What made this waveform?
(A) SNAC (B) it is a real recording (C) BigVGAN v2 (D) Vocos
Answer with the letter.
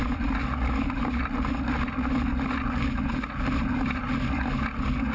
B